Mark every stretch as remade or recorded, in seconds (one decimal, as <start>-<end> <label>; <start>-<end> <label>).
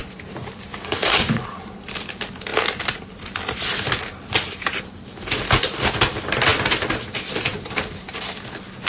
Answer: 0.0-0.7 recorded; 0.7-1.6 remade; 1.6-8.9 recorded